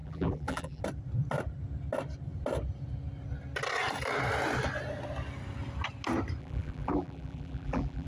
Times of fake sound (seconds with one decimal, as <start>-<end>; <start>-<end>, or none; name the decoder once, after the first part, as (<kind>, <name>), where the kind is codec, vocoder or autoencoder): 0.0-0.8 (vocoder, BigVGAN v2); 6.4-8.1